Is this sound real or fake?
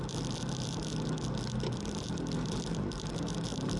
real